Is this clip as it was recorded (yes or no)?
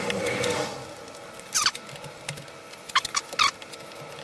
yes